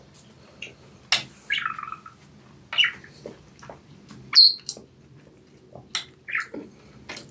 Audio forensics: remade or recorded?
recorded